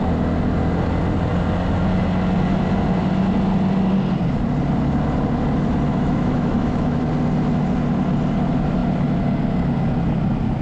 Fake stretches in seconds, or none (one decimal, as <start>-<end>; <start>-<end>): 5.9-7.0